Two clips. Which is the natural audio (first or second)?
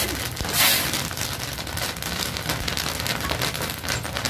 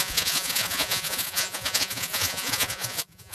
first